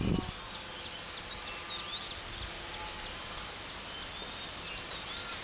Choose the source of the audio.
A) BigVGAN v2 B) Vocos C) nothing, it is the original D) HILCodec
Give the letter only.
C